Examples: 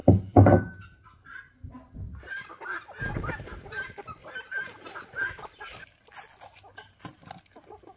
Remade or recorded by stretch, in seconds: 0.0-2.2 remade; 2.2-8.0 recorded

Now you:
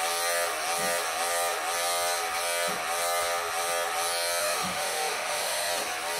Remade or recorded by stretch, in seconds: 0.0-4.4 recorded; 4.4-5.7 remade; 5.7-6.2 recorded